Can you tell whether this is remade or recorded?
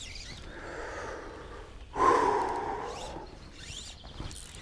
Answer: recorded